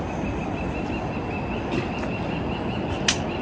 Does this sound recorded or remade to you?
recorded